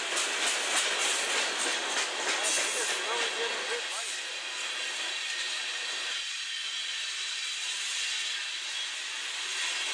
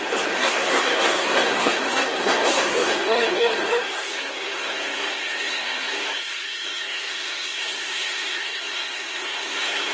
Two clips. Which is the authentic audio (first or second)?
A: first